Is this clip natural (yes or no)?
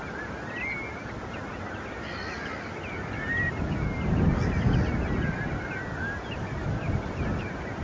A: yes